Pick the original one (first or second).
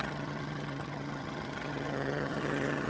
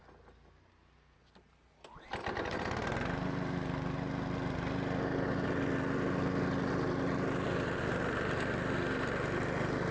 second